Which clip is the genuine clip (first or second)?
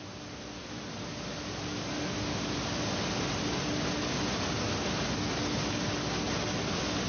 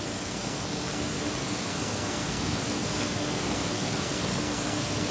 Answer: first